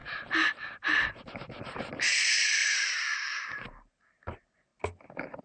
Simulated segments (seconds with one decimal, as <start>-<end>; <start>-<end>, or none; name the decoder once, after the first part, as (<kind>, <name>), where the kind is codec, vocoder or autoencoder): 0.0-1.9 (vocoder, BigVGAN v2); 2.6-4.0